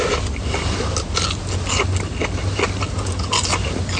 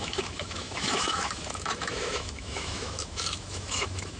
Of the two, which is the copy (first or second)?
second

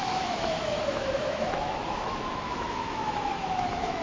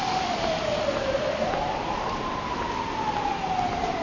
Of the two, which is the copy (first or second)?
first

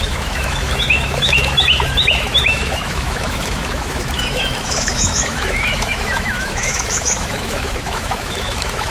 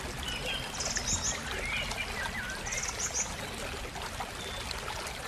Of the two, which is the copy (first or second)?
first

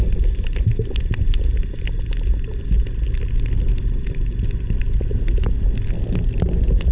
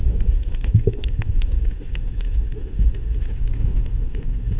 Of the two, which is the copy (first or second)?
second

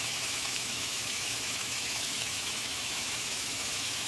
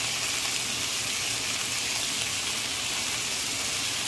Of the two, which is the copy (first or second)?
first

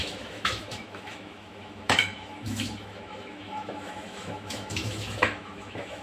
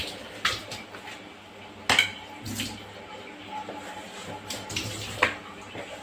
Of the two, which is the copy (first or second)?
first